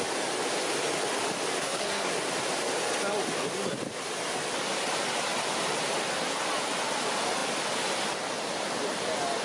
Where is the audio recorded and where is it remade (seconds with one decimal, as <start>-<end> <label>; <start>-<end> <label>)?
0.0-1.6 recorded; 1.6-2.1 remade; 2.1-9.4 recorded